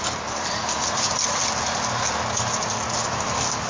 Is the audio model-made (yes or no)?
no